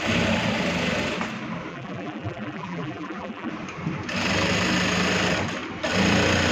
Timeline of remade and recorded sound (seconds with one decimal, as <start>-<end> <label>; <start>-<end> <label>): 0.0-1.7 recorded; 1.7-3.5 remade; 3.5-6.5 recorded